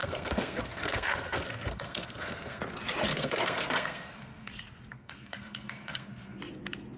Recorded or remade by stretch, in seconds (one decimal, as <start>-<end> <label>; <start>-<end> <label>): 0.0-2.6 remade; 2.6-3.1 recorded; 3.1-4.5 remade; 4.5-4.9 recorded; 4.9-6.4 remade; 6.4-7.0 recorded